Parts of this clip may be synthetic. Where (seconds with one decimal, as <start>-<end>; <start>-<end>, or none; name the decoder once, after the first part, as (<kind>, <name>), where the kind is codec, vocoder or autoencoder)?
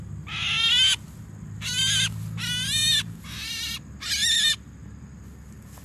none